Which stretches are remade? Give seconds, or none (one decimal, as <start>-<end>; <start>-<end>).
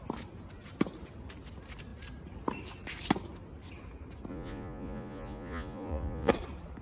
4.3-6.3